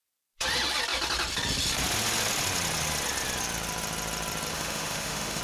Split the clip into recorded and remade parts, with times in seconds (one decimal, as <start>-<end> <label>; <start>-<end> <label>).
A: 0.0-4.5 recorded; 4.5-5.4 remade